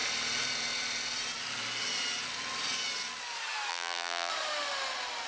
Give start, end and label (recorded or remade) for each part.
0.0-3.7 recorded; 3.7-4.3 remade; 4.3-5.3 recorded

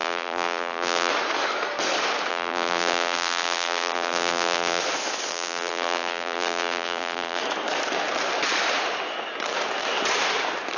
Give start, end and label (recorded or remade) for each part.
0.0-1.1 remade; 1.1-2.3 recorded; 2.3-4.8 remade; 4.8-5.3 recorded; 5.3-7.4 remade; 7.4-10.8 recorded

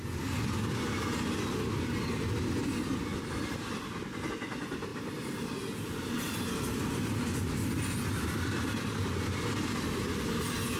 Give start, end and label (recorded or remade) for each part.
0.0-3.1 recorded; 3.1-4.3 remade; 4.3-4.9 recorded; 4.9-5.5 remade; 5.5-10.8 recorded

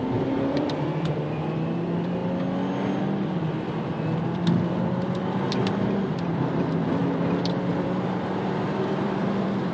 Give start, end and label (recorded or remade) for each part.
0.0-2.2 remade; 2.2-3.0 recorded; 3.0-5.5 remade; 5.5-6.1 recorded; 6.1-9.7 remade

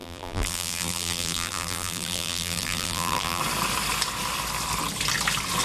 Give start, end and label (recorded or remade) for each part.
0.0-3.4 remade; 3.4-5.6 recorded

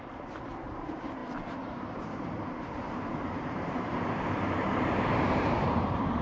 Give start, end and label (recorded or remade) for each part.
0.0-6.2 remade